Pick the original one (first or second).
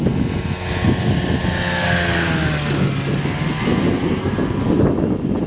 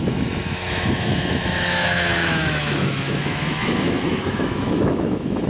first